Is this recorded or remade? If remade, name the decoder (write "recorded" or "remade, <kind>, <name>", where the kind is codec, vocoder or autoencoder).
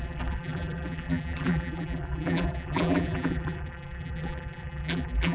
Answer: remade, vocoder, BigVGAN v2